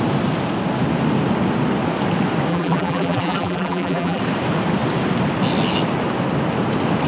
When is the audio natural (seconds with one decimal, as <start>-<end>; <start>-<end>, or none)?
0.0-2.5; 4.2-7.1